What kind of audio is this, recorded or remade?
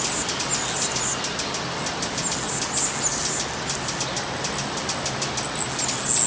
recorded